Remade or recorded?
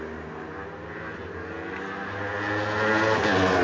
recorded